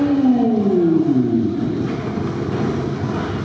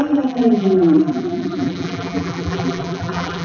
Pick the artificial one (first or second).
second